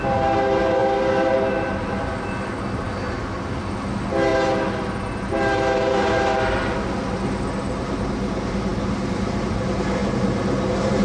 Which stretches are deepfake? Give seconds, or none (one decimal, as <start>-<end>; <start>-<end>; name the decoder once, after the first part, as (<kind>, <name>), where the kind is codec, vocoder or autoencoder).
none